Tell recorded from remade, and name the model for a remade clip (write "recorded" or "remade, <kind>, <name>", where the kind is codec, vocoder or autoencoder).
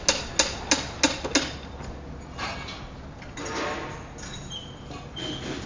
recorded